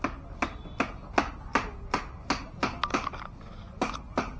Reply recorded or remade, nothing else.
recorded